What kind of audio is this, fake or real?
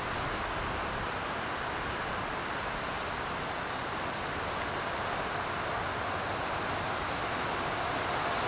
real